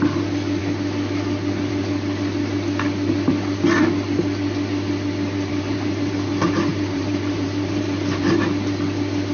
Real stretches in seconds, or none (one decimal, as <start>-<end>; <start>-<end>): 0.0-5.5; 6.1-6.7; 8.3-9.3